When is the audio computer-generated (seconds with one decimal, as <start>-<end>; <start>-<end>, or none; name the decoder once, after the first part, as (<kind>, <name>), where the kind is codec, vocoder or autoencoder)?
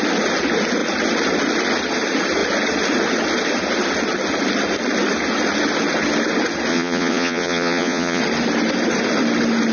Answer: 6.7-8.2 (vocoder, Vocos)